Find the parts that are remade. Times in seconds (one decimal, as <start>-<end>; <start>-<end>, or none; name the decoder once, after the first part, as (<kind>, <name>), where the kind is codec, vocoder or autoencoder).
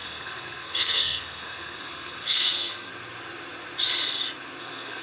0.0-2.9 (codec, SNAC); 4.6-5.0